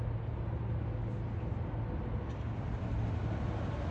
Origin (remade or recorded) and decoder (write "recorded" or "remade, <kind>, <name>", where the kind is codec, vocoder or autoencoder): recorded